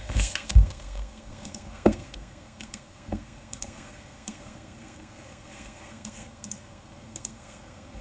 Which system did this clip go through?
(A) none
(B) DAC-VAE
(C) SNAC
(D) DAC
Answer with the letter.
C